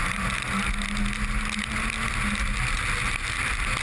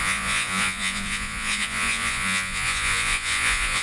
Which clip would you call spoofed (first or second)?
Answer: second